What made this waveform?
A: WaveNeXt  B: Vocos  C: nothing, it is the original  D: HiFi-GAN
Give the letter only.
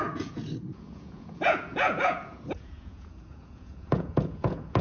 B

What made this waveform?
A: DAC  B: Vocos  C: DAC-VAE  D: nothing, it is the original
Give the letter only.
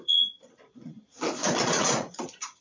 B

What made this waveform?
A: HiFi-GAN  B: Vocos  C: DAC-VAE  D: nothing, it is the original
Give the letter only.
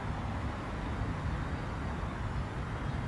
D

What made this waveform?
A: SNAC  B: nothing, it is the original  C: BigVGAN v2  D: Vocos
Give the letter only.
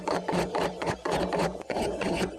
D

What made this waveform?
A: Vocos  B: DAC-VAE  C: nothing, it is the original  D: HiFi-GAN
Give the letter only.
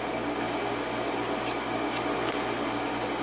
C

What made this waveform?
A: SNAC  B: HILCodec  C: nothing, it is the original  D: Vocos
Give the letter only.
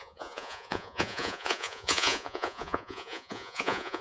D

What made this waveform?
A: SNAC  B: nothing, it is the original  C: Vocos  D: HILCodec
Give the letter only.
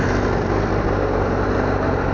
B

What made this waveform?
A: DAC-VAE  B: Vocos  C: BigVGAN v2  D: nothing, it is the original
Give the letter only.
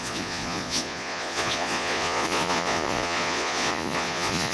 B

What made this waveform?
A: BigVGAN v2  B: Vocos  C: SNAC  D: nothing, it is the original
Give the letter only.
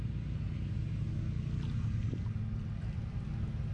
D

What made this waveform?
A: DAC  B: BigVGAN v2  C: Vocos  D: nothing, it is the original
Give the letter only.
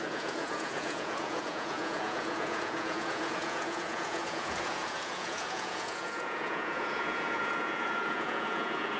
C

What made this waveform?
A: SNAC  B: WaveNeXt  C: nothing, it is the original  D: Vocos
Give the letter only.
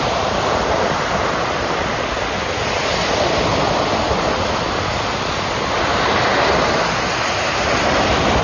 C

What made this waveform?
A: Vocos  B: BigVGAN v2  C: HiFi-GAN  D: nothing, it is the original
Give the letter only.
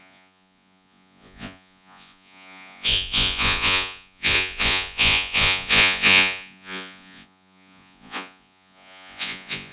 A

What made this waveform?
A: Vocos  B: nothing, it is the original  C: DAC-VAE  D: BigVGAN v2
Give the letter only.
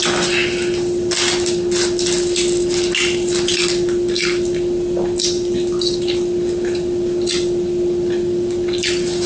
B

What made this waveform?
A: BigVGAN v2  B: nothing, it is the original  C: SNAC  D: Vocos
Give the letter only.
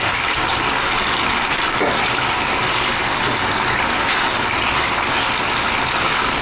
B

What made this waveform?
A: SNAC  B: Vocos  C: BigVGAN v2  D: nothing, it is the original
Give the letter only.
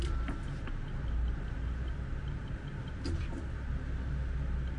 D